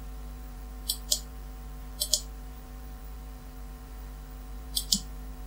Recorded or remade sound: remade